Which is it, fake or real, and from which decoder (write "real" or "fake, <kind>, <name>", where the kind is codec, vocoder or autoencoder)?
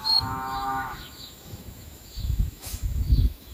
fake, autoencoder, DAC-VAE